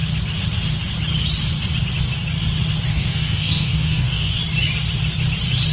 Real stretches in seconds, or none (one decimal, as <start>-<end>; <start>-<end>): 0.0-2.9; 4.4-5.7